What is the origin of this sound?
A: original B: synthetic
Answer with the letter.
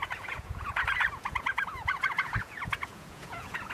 B